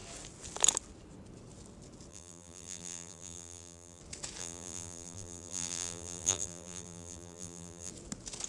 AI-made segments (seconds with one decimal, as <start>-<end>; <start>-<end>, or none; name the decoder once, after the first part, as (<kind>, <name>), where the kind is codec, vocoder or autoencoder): 2.1-4.0 (vocoder, BigVGAN v2); 4.4-7.9

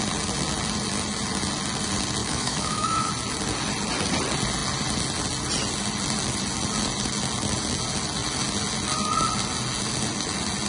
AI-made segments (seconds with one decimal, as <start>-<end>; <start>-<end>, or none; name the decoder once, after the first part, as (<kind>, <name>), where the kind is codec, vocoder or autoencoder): 2.2-3.1 (autoencoder, DAC-VAE)

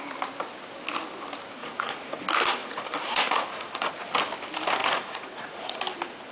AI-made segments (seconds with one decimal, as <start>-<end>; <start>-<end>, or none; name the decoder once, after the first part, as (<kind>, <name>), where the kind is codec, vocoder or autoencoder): 1.6-2.2 (vocoder, Vocos); 2.6-3.9; 4.8-5.8

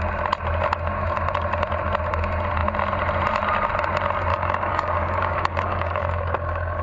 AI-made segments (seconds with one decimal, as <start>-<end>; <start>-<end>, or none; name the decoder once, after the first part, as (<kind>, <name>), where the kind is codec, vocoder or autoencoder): 4.3-6.8 (codec, DAC)

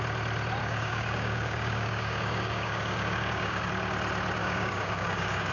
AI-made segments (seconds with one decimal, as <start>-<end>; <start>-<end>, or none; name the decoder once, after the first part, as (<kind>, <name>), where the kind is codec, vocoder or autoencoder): 0.6-3.7 (codec, DAC); 4.4-5.5

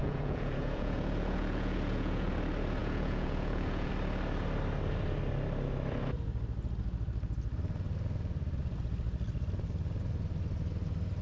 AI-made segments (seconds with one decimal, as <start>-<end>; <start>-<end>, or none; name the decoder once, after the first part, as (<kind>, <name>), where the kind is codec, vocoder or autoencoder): 0.0-2.3 (vocoder, Vocos); 2.8-3.9